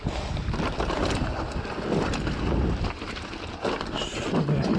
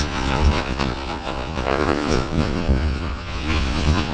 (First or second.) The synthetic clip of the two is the second